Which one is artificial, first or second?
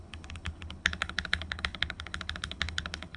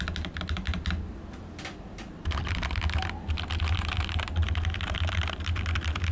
first